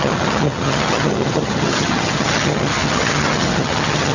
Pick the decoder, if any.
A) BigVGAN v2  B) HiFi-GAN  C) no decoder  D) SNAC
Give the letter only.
B